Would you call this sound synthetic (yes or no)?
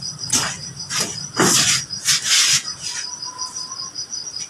no